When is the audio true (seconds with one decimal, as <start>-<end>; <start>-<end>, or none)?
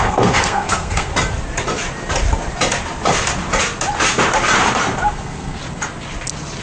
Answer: 1.1-5.1; 5.6-6.6